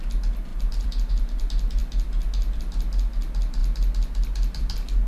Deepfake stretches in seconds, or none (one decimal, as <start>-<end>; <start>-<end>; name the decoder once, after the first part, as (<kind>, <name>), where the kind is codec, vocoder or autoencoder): 0.5-1.1 (vocoder, BigVGAN v2)